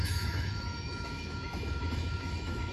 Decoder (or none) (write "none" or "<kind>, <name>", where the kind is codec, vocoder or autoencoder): autoencoder, DAC-VAE